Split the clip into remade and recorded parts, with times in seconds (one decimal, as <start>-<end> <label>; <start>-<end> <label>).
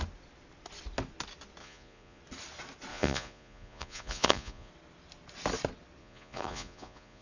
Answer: 0.0-1.6 recorded; 1.6-2.2 remade; 2.2-2.9 recorded; 2.9-4.7 remade; 4.7-6.0 recorded; 6.0-7.2 remade